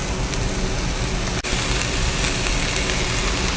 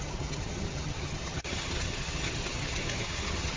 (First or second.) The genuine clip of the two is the first